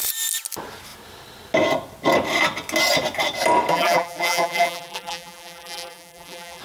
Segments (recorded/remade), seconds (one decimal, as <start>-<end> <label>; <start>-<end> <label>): 0.0-3.7 recorded; 3.7-6.6 remade